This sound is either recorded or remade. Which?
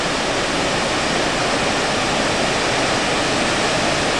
recorded